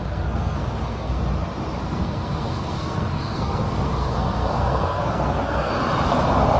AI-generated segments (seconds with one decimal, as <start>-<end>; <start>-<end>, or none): 0.0-1.2; 1.8-5.7